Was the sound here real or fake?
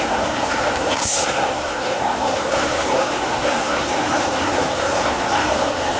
fake